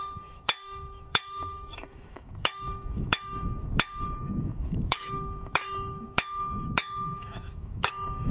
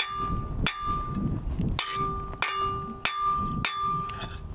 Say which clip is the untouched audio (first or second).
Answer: second